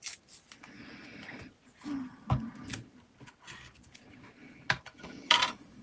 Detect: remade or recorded recorded